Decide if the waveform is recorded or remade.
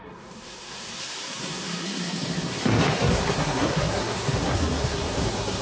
remade